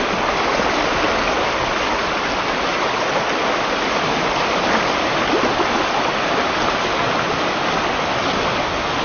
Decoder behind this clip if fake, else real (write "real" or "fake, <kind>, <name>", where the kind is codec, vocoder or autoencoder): real